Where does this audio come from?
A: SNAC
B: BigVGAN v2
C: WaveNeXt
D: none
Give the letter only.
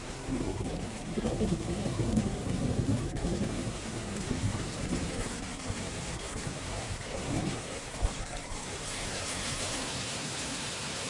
A